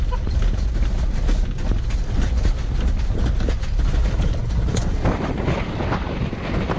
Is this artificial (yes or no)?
no